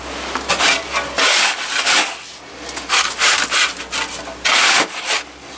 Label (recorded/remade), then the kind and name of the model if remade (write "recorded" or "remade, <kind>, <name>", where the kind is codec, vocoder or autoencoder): recorded